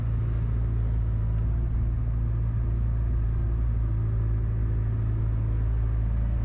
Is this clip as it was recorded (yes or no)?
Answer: yes